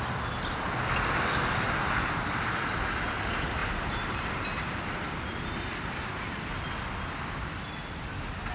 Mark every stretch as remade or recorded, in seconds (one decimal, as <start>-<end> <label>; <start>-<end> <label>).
0.0-8.5 recorded